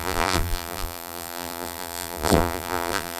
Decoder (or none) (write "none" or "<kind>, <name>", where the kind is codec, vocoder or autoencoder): vocoder, BigVGAN v2